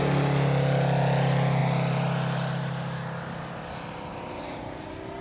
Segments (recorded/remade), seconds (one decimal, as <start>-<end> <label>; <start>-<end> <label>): 0.0-1.6 recorded; 1.6-3.6 remade; 3.6-4.1 recorded; 4.1-4.8 remade; 4.8-5.2 recorded